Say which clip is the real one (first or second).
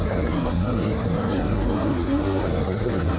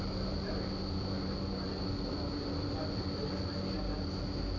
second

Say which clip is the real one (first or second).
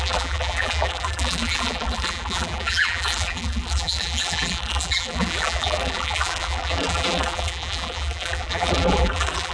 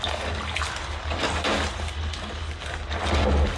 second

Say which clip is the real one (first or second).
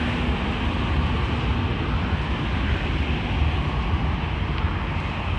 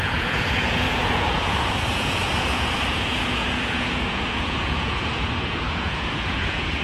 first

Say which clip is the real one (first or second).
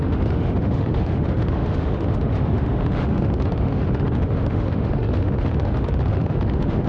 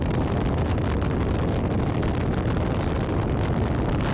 second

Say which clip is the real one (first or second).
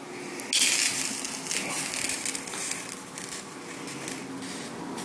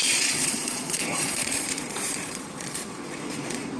first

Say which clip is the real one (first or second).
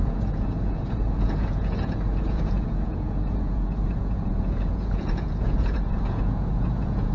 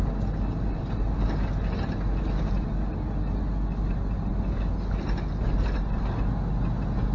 second